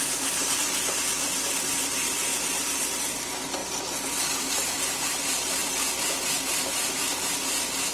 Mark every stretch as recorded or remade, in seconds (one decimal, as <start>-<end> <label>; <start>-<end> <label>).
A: 0.0-2.3 remade; 2.3-3.1 recorded; 3.1-3.6 remade; 3.6-4.4 recorded; 4.4-7.9 remade